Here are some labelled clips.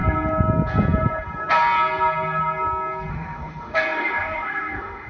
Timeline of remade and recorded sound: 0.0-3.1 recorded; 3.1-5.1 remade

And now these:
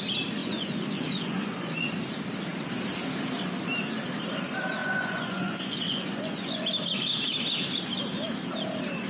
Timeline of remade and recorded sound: 0.0-0.4 recorded; 0.4-1.9 remade; 1.9-4.8 recorded; 4.8-6.6 remade; 6.6-9.1 recorded

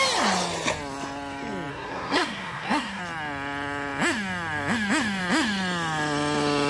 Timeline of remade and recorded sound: 0.0-1.7 recorded; 1.7-3.0 remade; 3.0-6.7 recorded

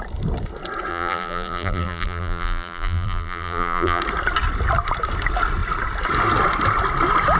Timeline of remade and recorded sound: 0.0-0.9 recorded; 0.9-4.0 remade; 4.0-7.4 recorded

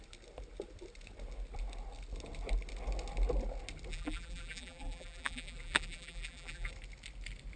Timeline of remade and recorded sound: 0.0-3.9 recorded; 3.9-6.7 remade; 6.7-7.6 recorded

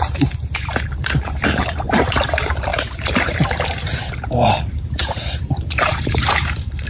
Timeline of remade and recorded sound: 0.0-6.9 remade

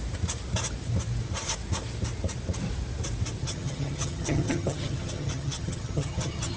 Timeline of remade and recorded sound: 0.0-3.4 recorded; 3.4-6.6 remade

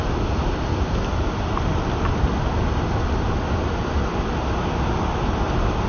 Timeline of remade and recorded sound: 0.0-5.9 recorded